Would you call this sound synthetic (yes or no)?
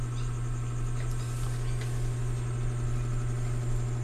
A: no